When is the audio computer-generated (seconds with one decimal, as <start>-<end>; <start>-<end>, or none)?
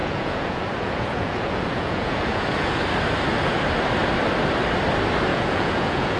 0.0-2.8; 5.3-6.2